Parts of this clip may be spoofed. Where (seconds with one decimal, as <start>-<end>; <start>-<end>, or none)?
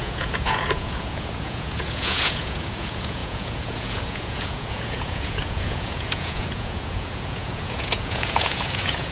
0.0-9.1